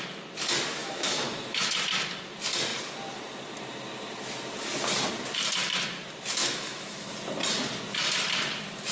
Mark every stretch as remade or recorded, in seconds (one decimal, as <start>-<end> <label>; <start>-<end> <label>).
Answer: 0.0-0.8 recorded; 0.8-1.8 remade; 1.8-6.4 recorded; 6.4-7.1 remade; 7.1-8.9 recorded